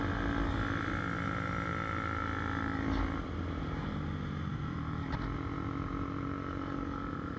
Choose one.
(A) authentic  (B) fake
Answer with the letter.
A